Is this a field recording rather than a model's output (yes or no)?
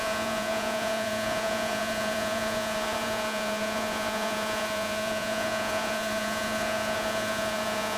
no